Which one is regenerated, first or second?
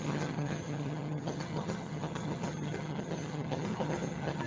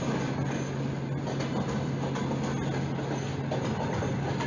first